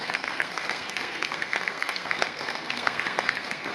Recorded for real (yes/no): no